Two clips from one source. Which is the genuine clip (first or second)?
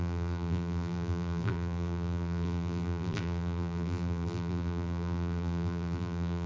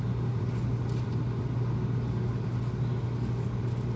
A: second